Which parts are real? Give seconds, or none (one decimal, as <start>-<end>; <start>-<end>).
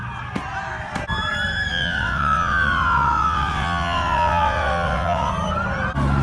0.0-1.7; 5.3-6.2